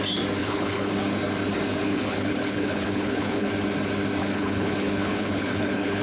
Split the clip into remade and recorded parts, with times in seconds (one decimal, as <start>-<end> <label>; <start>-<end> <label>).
0.0-0.4 recorded; 0.4-0.9 remade; 0.9-1.8 recorded; 1.8-3.5 remade; 3.5-4.2 recorded; 4.2-6.0 remade